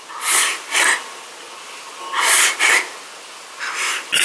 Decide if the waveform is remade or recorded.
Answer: recorded